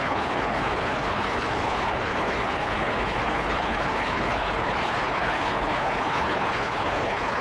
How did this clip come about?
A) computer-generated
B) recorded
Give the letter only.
A